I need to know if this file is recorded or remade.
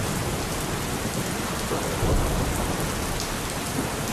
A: remade